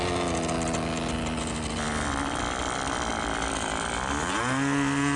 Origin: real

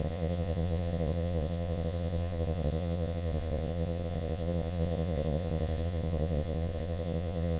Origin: fake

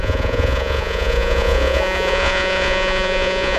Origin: fake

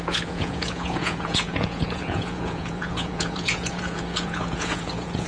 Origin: fake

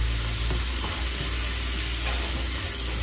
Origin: real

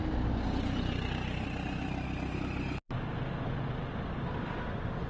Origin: real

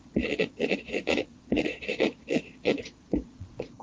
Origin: fake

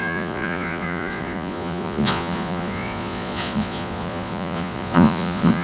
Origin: fake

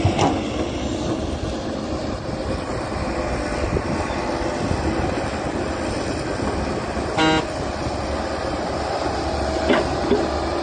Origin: real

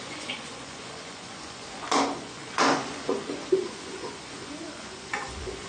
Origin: fake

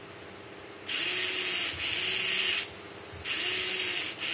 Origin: real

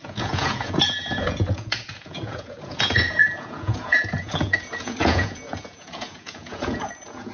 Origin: fake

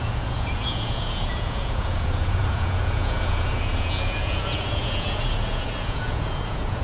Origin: fake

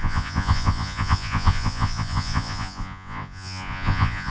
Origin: fake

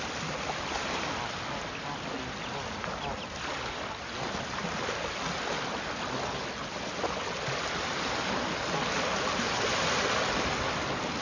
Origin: real